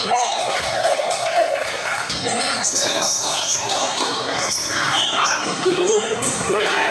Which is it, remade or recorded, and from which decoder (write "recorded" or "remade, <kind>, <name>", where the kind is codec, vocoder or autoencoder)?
remade, codec, SNAC